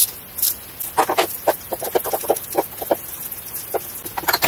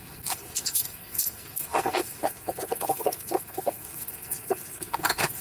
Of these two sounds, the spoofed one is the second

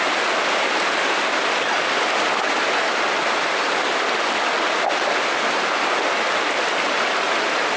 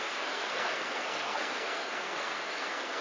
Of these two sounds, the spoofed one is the second